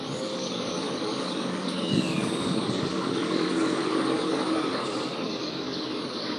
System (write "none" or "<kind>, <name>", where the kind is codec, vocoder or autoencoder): codec, DAC